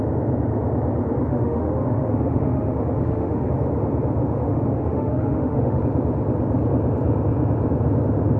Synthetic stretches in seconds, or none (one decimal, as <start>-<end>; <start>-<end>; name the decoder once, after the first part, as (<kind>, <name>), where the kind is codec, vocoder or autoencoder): 1.3-3.5 (autoencoder, DAC-VAE); 4.4-5.8